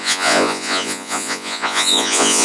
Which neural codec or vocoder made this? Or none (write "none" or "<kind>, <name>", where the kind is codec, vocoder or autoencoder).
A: vocoder, Vocos